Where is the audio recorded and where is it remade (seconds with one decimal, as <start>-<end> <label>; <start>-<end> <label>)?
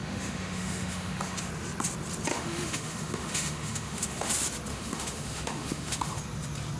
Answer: 0.0-1.5 remade; 1.5-2.3 recorded; 2.3-4.3 remade; 4.3-4.7 recorded; 4.7-6.2 remade; 6.2-6.8 recorded